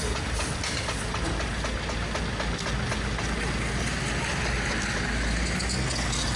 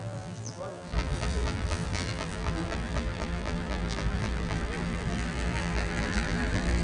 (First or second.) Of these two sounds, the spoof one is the second